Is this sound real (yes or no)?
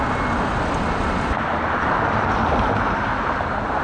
yes